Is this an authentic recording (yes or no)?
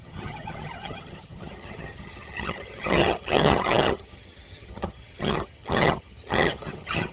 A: no